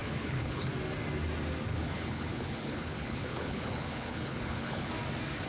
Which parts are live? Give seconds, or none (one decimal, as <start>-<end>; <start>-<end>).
0.7-1.7; 4.9-5.5